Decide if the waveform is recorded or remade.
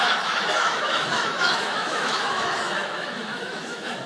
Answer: remade